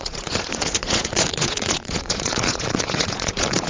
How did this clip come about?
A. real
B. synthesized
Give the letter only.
B